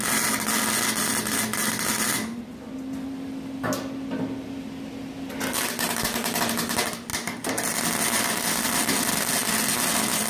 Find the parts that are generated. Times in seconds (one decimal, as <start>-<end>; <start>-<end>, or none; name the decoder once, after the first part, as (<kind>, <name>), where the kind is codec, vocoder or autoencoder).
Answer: 7.1-8.2 (vocoder, BigVGAN v2)

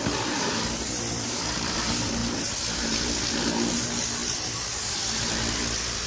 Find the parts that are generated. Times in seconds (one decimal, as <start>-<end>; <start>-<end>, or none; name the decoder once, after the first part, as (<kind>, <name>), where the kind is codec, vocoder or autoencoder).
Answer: none

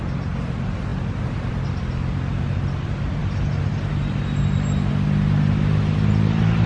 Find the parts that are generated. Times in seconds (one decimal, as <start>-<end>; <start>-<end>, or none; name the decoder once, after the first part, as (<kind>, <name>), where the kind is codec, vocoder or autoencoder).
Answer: none

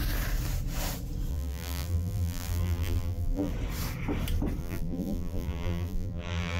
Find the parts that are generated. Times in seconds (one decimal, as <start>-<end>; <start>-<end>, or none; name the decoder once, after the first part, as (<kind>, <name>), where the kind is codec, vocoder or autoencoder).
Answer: 1.3-3.5 (vocoder, BigVGAN v2); 4.6-6.6

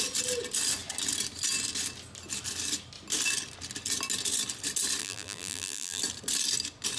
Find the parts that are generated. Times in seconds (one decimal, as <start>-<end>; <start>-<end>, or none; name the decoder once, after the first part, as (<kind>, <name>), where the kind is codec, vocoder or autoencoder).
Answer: 5.0-6.0 (vocoder, BigVGAN v2)

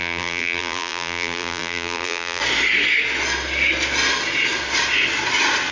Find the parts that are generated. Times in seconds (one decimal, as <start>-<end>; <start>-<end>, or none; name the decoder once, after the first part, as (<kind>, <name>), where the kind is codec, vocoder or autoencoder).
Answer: 0.0-2.4 (vocoder, BigVGAN v2)

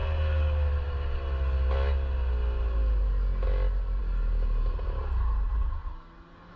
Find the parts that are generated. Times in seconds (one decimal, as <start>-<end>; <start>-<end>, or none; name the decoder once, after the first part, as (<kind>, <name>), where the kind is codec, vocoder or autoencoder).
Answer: none

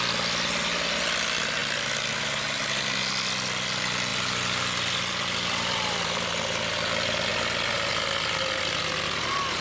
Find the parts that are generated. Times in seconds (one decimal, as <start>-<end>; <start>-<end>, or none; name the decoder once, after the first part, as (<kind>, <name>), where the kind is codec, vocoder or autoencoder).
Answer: 4.1-6.3 (vocoder, BigVGAN v2)